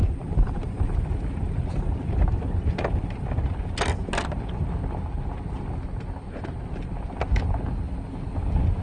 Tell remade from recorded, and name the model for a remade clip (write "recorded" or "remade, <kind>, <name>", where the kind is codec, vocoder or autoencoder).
recorded